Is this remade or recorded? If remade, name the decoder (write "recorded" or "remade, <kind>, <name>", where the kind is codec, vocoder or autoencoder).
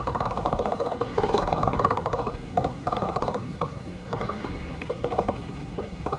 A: remade, codec, SNAC